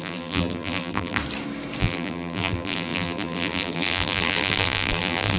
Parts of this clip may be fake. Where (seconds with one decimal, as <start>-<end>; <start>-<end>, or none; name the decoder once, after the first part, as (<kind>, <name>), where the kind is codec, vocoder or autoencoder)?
0.0-1.2 (vocoder, BigVGAN v2); 1.8-5.4